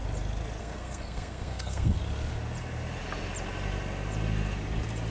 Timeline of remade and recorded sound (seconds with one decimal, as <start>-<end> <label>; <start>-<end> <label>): 0.0-0.6 recorded; 0.6-2.0 remade; 2.0-5.1 recorded